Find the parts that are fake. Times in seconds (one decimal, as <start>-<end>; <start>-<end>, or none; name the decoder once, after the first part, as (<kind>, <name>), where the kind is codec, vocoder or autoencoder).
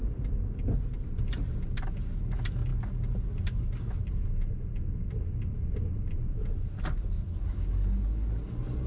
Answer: none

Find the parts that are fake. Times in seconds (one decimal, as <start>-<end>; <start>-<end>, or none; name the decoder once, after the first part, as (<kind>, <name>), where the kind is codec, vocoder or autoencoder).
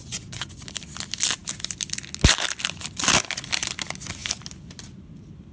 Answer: 0.0-0.6 (vocoder, Vocos)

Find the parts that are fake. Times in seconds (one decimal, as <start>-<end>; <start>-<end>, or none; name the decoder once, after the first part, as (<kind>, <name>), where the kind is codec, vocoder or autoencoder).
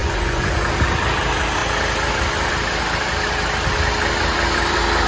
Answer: 0.0-0.6 (vocoder, Vocos)